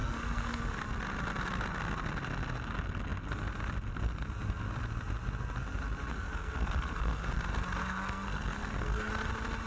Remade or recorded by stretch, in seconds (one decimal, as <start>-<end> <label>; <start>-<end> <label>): 0.0-0.6 remade; 0.6-6.1 recorded; 6.1-7.2 remade; 7.2-7.8 recorded; 7.8-9.1 remade; 9.1-9.7 recorded